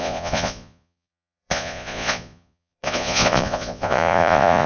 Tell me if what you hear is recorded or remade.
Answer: remade